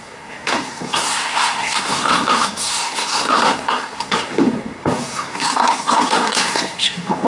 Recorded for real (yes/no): no